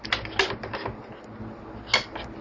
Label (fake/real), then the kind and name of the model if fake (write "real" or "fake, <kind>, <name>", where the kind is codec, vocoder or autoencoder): real